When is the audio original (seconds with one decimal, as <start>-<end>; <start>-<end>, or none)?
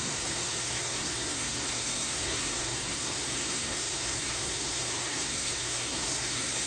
none